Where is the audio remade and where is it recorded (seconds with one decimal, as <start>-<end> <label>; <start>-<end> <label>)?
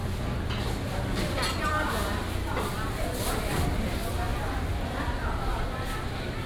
0.0-0.6 recorded; 0.6-2.0 remade; 2.0-2.7 recorded; 2.7-4.3 remade; 4.3-5.6 recorded; 5.6-6.5 remade